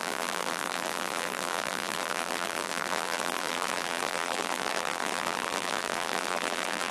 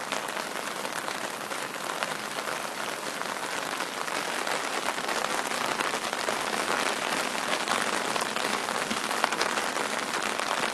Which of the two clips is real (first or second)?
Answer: second